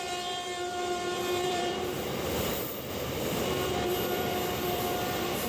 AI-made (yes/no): yes